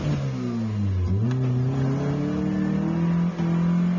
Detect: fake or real real